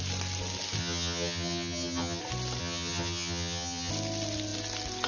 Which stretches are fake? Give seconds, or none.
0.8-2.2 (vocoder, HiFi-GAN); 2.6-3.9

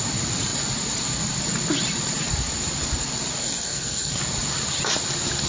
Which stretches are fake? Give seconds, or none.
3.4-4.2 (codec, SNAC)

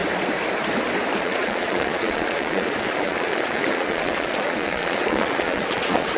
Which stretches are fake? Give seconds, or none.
1.2-6.2 (vocoder, Vocos)

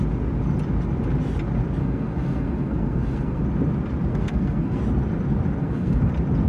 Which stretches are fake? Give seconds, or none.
1.8-3.4 (codec, SNAC); 4.1-4.8; 5.6-6.1